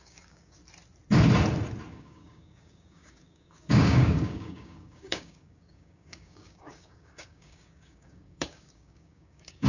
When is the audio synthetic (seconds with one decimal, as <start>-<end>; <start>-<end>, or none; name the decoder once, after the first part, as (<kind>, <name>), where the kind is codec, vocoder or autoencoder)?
0.0-0.6 (codec, DAC); 1.9-9.7